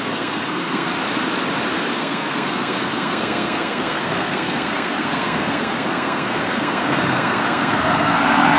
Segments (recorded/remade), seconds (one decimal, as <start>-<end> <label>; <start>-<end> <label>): 0.0-0.9 remade; 0.9-1.9 recorded; 1.9-8.6 remade

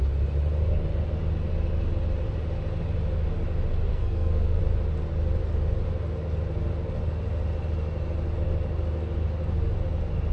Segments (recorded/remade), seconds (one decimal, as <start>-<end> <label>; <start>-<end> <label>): 0.0-3.9 recorded; 3.9-4.6 remade; 4.6-10.3 recorded